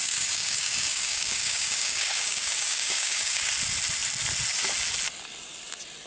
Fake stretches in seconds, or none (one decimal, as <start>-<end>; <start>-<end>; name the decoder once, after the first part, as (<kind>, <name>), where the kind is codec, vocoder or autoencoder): 0.0-3.5 (codec, DAC)